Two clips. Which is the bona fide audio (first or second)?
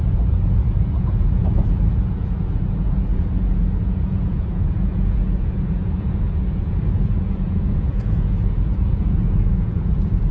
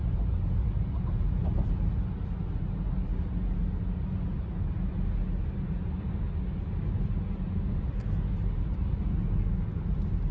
second